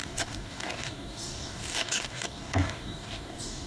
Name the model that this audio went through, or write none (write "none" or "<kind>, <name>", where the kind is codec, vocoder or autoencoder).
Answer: codec, DAC